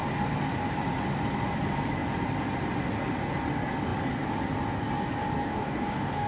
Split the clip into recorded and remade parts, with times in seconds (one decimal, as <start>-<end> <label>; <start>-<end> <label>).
0.0-5.4 recorded; 5.4-6.3 remade